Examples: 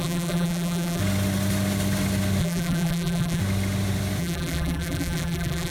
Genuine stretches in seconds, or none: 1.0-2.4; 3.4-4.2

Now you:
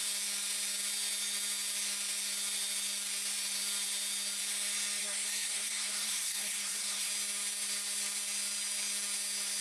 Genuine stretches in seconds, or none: 0.0-5.0; 7.1-9.6

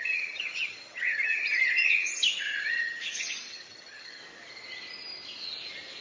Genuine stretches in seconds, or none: 4.2-6.0

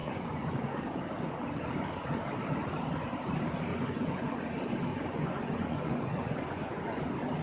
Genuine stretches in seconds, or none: 0.8-3.7; 4.4-4.9; 7.0-7.4